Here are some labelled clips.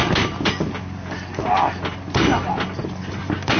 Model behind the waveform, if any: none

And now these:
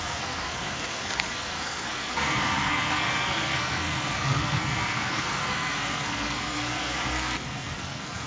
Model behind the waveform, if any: codec, SNAC